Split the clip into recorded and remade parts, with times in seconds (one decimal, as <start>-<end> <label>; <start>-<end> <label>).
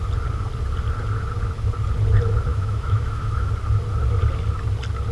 0.0-2.5 recorded; 2.5-3.5 remade; 3.5-5.1 recorded